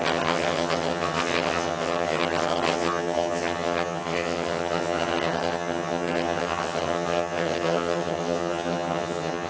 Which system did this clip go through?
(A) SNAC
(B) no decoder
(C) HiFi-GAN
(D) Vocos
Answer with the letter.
C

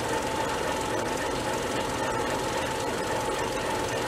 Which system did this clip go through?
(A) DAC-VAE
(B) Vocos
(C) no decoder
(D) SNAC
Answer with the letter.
C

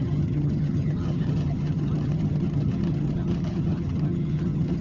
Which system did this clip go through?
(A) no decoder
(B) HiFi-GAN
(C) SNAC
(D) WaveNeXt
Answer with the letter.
B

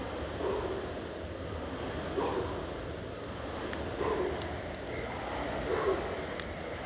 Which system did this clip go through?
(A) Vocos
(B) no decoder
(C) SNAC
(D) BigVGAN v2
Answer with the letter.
B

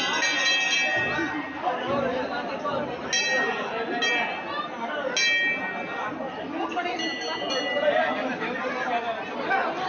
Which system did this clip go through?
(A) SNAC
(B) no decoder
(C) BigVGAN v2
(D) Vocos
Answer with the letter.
B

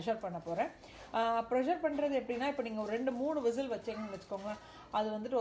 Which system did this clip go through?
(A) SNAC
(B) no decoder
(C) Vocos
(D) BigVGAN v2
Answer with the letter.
B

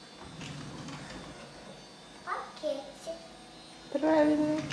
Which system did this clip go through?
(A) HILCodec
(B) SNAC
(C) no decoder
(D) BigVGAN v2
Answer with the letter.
C